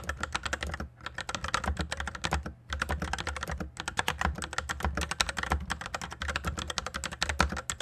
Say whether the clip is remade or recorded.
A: recorded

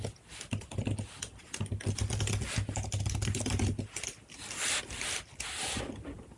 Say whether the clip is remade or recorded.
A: recorded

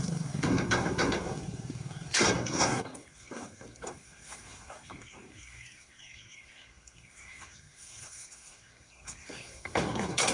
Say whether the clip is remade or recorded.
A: remade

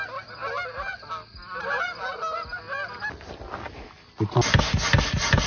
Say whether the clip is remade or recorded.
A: recorded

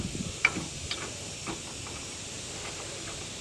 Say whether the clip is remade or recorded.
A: recorded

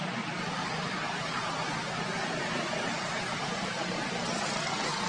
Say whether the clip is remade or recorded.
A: recorded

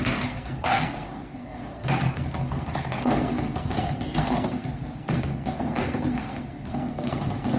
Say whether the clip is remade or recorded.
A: remade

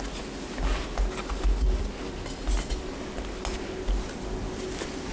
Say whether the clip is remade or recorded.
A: recorded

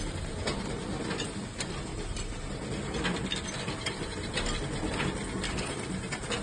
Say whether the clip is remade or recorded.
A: recorded